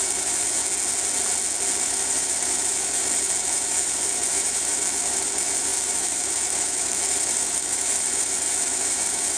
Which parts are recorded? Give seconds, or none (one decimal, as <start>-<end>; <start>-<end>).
0.6-1.8